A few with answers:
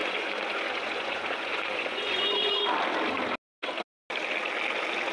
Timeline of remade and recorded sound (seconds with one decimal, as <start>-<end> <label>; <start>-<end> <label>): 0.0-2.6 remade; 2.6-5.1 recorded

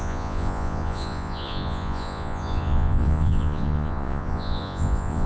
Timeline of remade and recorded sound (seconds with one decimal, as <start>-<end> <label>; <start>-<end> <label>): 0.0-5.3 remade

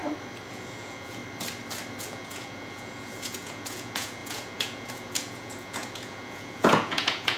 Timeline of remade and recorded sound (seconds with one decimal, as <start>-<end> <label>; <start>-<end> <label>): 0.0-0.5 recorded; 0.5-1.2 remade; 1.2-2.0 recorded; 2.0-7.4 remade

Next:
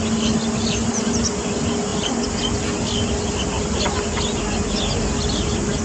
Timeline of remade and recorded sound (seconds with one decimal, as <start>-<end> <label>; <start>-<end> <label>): 0.0-5.8 recorded

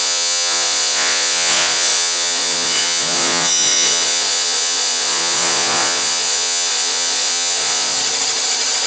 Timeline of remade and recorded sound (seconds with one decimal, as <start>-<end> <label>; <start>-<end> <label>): 0.0-8.0 remade; 8.0-8.9 recorded